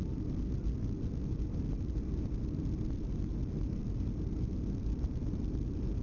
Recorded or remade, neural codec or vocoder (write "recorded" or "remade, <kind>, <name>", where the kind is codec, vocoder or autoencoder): recorded